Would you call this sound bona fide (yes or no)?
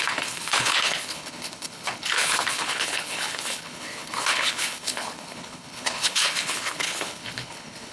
no